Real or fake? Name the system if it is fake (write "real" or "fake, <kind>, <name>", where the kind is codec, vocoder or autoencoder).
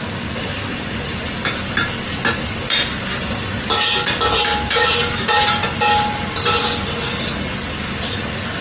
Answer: real